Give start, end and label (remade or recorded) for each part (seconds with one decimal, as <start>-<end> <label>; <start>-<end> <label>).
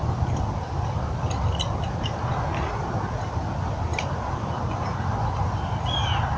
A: 0.0-6.4 recorded